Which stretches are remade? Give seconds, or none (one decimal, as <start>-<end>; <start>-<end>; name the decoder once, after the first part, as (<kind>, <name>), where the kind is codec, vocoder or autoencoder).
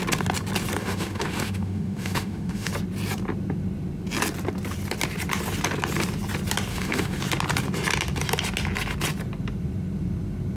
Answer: 0.8-2.7 (autoencoder, DAC-VAE); 6.7-7.2